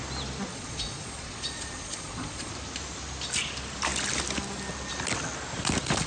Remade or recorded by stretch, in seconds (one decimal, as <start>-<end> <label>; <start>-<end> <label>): 0.0-0.5 recorded; 0.5-2.5 remade; 2.5-6.1 recorded